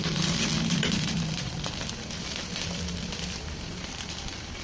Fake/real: fake